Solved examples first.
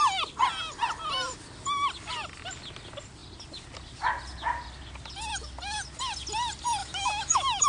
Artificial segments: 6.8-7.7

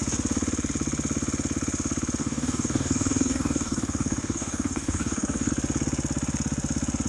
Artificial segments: 2.2-5.5

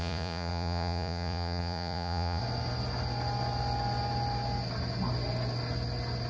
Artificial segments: 0.0-2.4

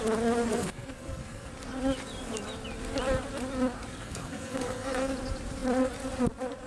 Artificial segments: 0.5-1.5; 3.9-5.1

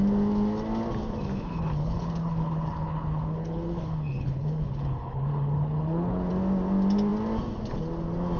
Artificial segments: 1.3-6.3